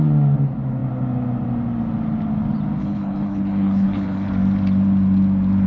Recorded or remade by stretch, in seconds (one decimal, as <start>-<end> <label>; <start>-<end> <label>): 0.0-2.8 recorded; 2.8-4.3 remade; 4.3-5.7 recorded

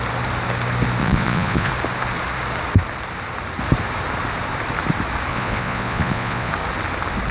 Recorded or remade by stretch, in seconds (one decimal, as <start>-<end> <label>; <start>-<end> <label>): 0.0-1.0 recorded; 1.0-1.7 remade; 1.7-5.3 recorded; 5.3-6.5 remade; 6.5-7.3 recorded